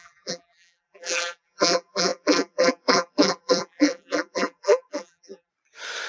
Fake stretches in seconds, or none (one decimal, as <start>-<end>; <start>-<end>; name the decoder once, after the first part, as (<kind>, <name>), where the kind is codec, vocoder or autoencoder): 0.0-5.5 (vocoder, BigVGAN v2)